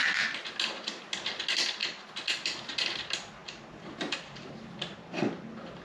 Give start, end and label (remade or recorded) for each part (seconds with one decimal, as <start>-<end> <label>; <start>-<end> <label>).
0.0-5.8 recorded